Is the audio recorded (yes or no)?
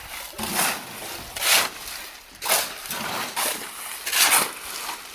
yes